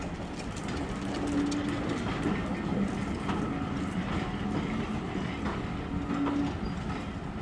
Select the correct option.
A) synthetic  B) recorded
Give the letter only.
B